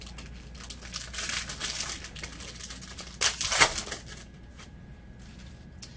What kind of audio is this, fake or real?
real